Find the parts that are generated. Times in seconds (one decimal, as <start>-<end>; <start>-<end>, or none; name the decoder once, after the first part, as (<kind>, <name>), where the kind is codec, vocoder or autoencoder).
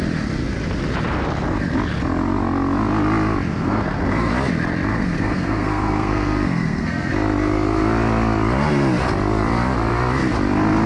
3.5-4.3 (codec, SNAC); 4.9-7.1